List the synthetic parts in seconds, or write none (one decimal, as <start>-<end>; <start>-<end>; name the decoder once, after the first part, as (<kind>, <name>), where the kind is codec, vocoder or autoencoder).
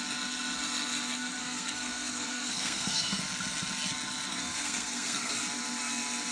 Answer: 1.4-3.2 (codec, SNAC); 4.3-5.3